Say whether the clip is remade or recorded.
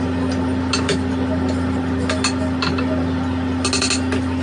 recorded